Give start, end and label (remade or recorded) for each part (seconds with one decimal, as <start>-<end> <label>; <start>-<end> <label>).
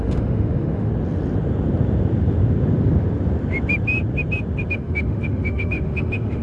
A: 0.0-0.9 remade; 0.9-4.7 recorded; 4.7-6.4 remade